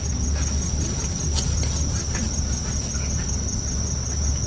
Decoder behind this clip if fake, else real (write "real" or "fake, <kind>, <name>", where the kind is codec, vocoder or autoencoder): real